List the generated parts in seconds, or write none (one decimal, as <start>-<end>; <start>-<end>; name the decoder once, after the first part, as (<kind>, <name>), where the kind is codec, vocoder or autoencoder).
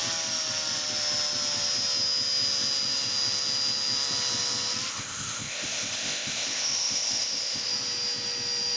4.9-7.7 (codec, ZipCodec)